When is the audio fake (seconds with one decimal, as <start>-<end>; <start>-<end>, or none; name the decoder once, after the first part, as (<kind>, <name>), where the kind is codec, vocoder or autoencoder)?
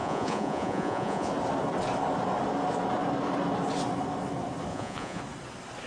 0.0-1.3 (vocoder, Vocos); 4.7-5.2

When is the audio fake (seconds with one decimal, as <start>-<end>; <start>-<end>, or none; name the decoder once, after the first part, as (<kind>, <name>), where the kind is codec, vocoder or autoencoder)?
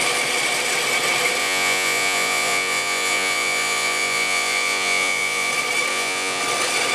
1.4-5.5 (vocoder, Vocos); 5.9-6.4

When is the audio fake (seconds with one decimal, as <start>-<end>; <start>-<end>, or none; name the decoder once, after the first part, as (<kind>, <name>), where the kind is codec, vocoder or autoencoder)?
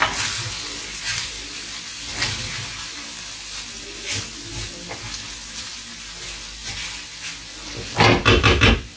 none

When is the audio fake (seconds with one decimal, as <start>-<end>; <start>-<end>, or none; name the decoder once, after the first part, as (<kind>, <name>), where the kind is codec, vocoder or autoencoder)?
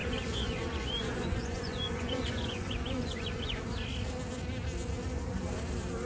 0.0-3.6 (vocoder, Vocos)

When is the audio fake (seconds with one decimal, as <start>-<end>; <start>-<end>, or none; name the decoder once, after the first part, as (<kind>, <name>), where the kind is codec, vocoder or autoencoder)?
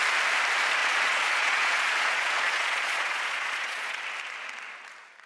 0.8-4.0 (vocoder, Vocos)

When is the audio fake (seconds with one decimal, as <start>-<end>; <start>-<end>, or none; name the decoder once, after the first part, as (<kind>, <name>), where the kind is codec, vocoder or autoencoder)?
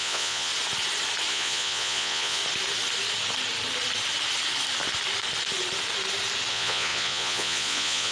0.0-0.5 (vocoder, Vocos); 1.3-2.4; 6.5-8.1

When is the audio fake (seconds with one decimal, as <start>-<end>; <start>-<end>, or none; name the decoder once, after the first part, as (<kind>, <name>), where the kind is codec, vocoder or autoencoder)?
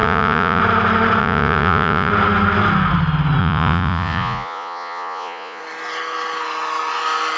0.0-0.6 (vocoder, Vocos); 1.2-2.1; 3.4-5.6